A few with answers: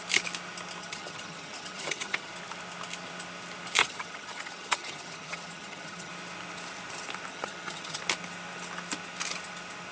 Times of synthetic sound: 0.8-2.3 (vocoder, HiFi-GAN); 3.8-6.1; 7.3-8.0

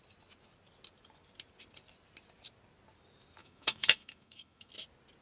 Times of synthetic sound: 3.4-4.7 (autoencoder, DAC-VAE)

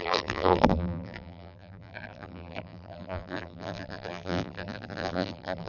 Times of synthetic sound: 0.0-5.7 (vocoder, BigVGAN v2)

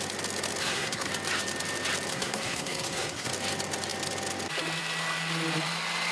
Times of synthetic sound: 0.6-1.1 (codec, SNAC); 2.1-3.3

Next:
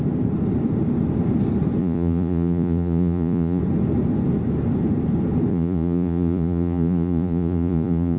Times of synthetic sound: 1.8-3.6 (vocoder, Vocos); 5.5-8.2

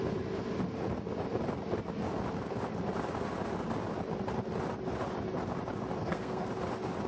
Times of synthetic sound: 6.0-6.5 (codec, SNAC)

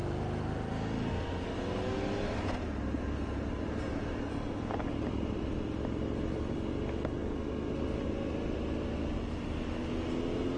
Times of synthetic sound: none